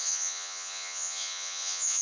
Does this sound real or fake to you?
fake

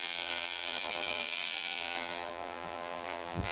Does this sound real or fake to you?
fake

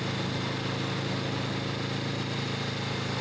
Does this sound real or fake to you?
real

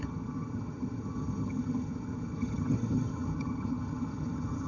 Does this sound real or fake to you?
fake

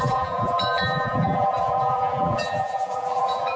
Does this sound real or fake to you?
fake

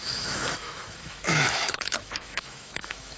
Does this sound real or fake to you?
fake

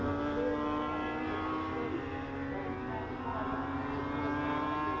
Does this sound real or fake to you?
real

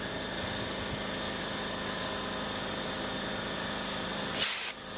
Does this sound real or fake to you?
real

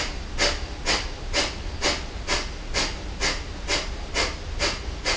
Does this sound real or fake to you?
real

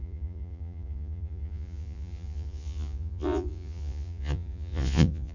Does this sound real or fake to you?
fake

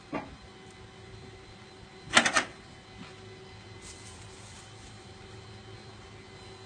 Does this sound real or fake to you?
real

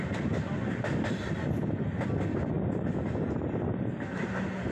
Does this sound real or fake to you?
real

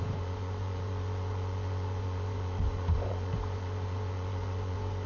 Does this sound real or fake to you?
fake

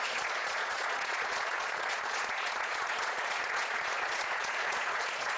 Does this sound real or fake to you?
fake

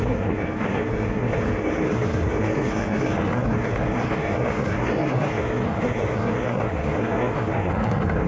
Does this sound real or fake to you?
fake